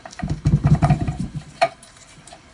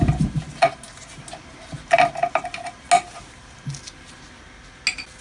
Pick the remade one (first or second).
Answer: first